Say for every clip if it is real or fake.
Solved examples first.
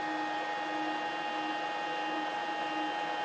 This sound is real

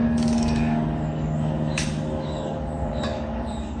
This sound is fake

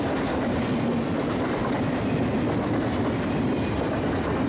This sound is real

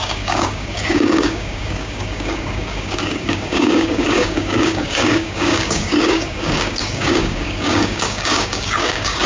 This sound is fake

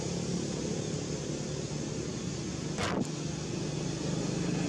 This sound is real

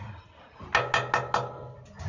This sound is real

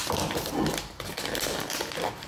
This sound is real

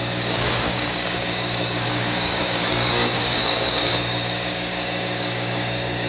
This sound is fake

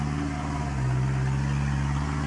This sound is real